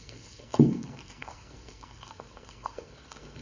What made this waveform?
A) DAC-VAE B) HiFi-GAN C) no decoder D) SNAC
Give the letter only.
D